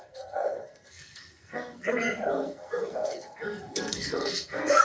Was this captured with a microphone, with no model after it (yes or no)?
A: no